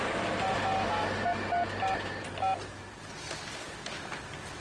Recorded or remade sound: recorded